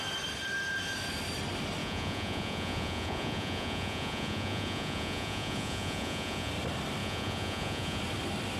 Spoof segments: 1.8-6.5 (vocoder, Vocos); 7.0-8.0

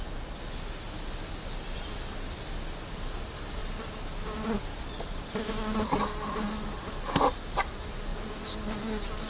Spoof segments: none

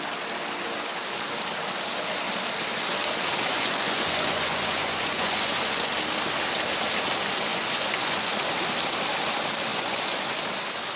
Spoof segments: 3.5-5.9 (vocoder, Vocos); 7.5-8.3; 9.7-10.4

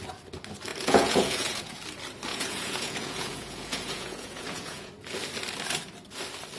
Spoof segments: 0.7-1.8 (vocoder, Vocos); 2.3-4.9

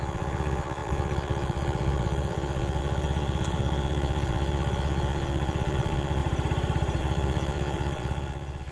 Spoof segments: 0.0-6.2 (vocoder, Vocos); 7.0-8.7